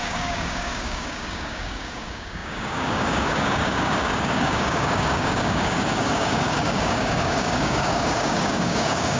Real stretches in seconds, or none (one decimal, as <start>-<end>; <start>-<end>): none